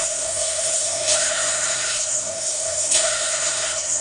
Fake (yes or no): yes